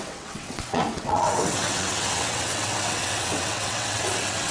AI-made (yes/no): yes